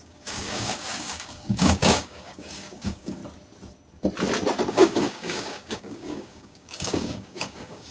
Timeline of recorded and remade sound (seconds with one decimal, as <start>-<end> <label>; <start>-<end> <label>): 0.0-3.2 remade; 3.2-4.7 recorded; 4.7-7.9 remade